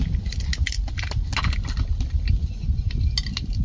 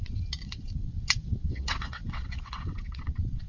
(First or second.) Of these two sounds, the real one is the first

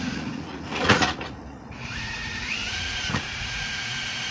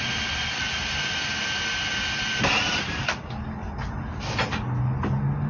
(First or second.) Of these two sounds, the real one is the second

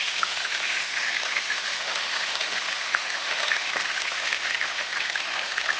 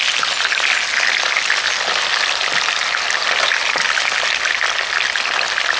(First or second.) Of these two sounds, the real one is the second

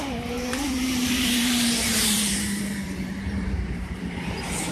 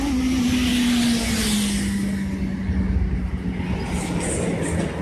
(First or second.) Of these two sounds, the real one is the second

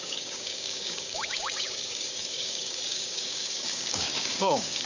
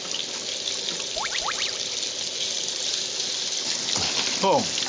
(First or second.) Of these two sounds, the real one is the second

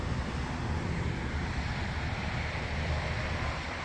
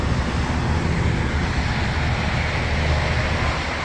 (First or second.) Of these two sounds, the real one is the second